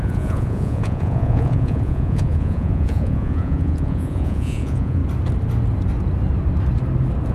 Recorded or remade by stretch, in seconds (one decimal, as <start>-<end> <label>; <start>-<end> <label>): 0.0-5.0 remade; 5.0-7.3 recorded